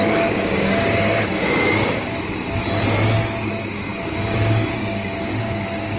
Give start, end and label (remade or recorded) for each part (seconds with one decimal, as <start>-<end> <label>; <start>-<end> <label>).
0.0-2.6 remade; 2.6-3.5 recorded; 3.5-6.0 remade